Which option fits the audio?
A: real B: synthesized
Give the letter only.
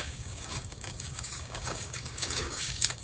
B